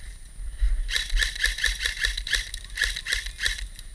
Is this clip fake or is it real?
real